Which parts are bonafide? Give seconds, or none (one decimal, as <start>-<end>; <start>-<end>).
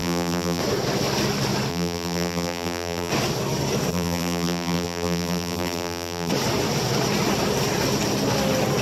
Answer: 0.6-1.7; 3.1-3.9; 6.3-8.8